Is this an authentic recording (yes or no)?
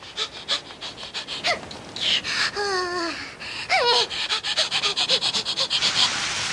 yes